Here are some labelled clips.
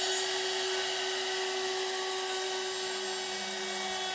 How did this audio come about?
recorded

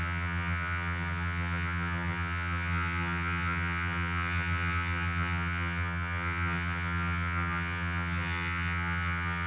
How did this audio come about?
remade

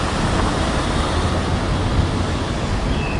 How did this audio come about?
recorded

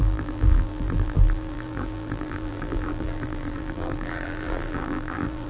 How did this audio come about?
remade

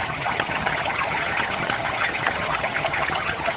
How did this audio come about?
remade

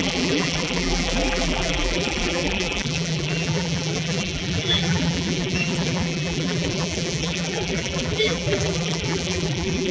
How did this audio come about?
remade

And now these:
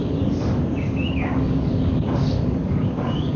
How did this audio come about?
remade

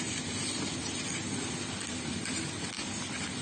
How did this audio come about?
recorded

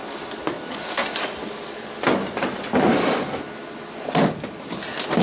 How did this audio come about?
recorded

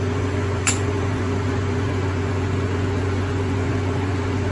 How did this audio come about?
remade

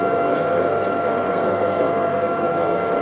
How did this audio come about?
remade